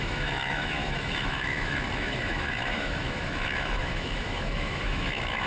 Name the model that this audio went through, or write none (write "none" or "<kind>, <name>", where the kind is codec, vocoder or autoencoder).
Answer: autoencoder, DAC-VAE